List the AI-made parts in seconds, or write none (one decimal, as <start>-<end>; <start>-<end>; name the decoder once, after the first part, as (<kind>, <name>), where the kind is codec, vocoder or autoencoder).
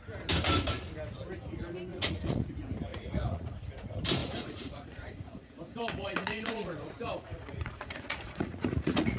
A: 1.9-2.5 (vocoder, Vocos); 2.9-3.7; 4.2-9.2